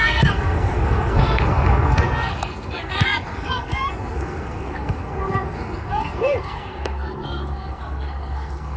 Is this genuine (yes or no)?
no